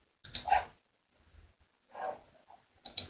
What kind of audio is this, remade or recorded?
recorded